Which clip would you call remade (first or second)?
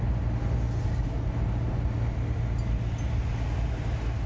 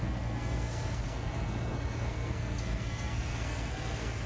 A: second